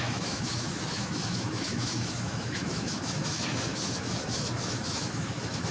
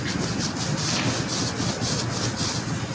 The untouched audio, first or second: second